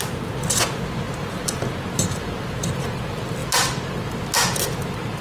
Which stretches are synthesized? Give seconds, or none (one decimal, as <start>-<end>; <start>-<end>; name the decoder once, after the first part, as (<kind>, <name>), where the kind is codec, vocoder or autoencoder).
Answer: none